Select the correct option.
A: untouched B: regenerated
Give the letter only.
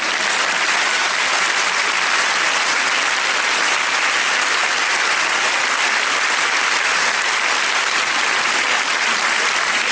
A